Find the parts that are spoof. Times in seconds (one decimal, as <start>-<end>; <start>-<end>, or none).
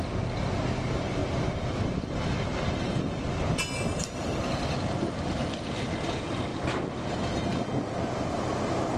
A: none